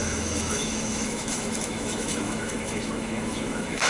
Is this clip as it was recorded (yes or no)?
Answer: no